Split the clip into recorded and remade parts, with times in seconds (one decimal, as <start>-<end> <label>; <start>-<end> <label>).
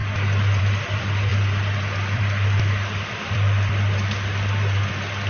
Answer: 0.0-5.3 remade